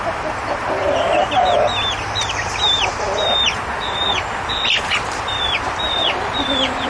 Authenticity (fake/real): fake